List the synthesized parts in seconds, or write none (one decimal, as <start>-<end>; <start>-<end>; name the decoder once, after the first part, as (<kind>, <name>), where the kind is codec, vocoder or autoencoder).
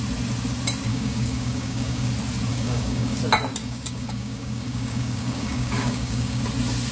0.9-2.1 (codec, DAC); 2.5-3.2; 3.6-6.4